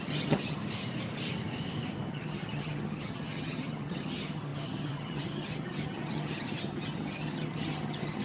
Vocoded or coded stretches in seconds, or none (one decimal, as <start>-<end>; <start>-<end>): 0.0-0.6; 2.1-8.2